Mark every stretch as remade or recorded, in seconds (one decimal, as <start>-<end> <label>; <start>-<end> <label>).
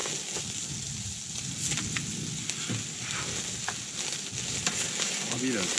0.0-5.8 recorded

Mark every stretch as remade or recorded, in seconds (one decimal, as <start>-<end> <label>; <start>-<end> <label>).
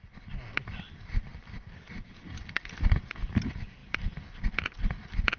0.0-5.4 recorded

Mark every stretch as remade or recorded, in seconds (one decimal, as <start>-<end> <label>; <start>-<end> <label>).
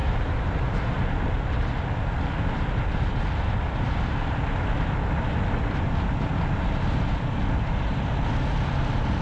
0.0-0.9 remade; 0.9-9.2 recorded